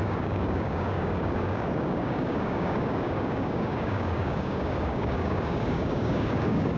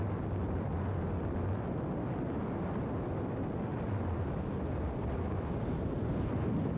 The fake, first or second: first